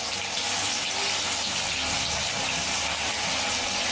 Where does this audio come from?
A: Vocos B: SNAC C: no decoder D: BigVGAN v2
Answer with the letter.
C